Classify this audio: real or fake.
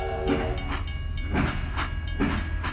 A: real